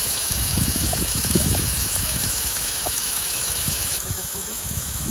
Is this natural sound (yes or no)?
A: no